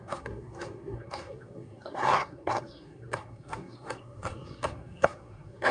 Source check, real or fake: fake